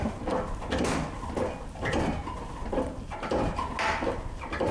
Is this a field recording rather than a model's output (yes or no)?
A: yes